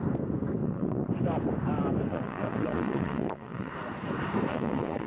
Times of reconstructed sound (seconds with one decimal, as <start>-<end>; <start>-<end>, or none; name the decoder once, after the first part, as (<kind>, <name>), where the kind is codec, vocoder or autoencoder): 0.6-1.1 (vocoder, Vocos); 2.1-3.7; 4.5-5.1

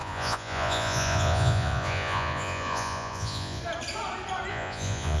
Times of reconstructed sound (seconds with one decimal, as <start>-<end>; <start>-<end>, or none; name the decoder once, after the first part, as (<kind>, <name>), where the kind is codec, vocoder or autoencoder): 0.0-3.6 (vocoder, Vocos); 4.5-5.2

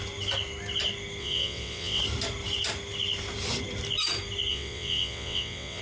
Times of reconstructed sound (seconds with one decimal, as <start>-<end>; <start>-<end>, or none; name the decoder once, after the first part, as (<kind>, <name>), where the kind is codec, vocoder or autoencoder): 1.2-2.0 (vocoder, WaveNeXt); 4.5-5.8

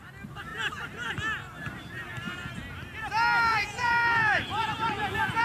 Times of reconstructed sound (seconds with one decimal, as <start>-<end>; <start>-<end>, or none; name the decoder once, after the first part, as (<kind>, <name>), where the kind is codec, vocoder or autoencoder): 3.5-4.9 (vocoder, Vocos)

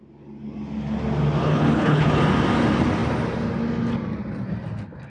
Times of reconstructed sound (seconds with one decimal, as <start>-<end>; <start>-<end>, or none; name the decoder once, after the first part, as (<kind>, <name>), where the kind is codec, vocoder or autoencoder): 1.4-2.2 (codec, HILCodec)

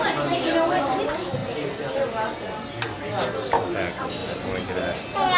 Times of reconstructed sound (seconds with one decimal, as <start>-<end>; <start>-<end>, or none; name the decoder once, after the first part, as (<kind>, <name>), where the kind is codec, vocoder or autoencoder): none